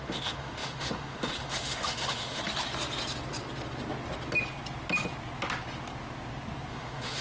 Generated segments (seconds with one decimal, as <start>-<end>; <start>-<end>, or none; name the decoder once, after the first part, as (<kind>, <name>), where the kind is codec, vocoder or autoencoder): 0.0-2.4 (autoencoder, DAC-VAE); 6.7-7.2